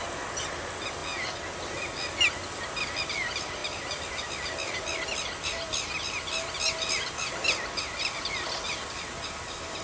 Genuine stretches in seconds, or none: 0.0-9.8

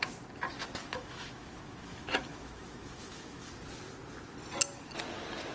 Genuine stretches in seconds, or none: 0.0-0.8; 3.5-5.5

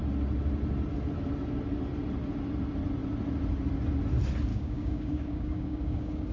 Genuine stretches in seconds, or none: 0.0-4.5

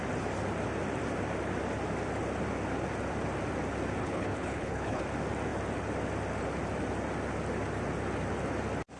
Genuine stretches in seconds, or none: 0.0-4.0; 5.0-9.0

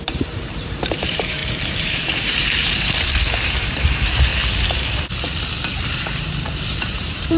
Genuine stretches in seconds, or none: 4.3-6.8

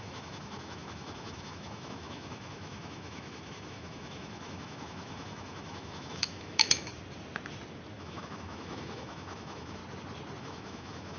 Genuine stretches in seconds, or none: 6.9-8.0; 9.8-10.4